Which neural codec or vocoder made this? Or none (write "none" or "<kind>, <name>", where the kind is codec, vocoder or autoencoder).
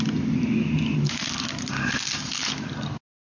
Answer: none